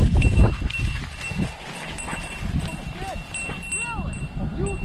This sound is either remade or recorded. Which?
recorded